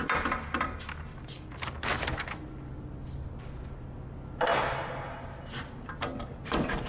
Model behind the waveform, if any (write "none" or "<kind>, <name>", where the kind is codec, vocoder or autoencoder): none